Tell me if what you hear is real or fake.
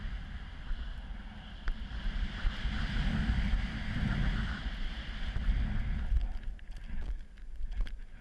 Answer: real